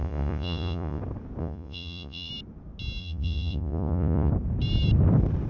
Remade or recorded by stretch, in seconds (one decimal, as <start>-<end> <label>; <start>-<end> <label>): 0.0-1.0 remade; 1.0-1.4 recorded; 1.4-2.3 remade; 2.3-3.0 recorded; 3.0-4.3 remade; 4.3-5.5 recorded